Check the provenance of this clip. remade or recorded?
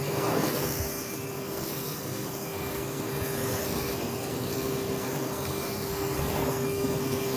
remade